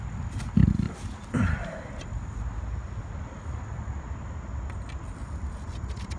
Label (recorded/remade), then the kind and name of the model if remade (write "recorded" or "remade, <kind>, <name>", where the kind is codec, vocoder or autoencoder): recorded